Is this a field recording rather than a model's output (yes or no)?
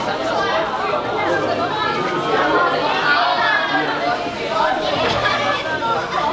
no